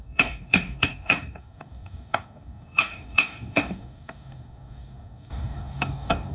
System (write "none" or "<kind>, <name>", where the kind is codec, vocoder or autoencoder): codec, DAC